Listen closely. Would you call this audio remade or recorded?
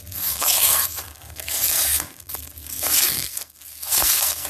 remade